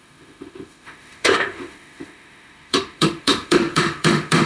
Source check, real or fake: fake